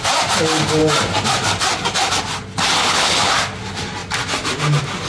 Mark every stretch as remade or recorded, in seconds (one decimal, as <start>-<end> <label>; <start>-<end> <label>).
0.0-2.8 recorded; 2.8-3.3 remade; 3.3-5.1 recorded